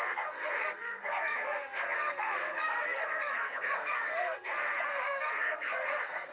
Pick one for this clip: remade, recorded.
remade